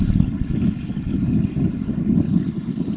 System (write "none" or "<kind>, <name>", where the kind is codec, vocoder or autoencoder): none